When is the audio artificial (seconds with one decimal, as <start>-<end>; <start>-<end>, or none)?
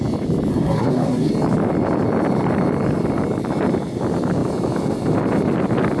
0.5-1.3